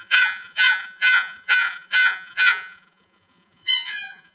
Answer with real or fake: fake